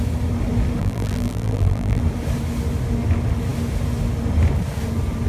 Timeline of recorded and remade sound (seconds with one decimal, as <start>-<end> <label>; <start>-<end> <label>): 0.0-0.8 recorded; 0.8-2.0 remade; 2.0-5.3 recorded